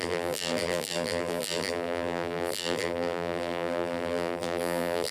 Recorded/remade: remade